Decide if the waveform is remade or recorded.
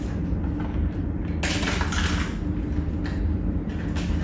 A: recorded